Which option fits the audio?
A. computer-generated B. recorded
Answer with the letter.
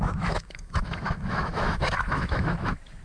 A